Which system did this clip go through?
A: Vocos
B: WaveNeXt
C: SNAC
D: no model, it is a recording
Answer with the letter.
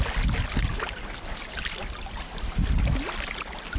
D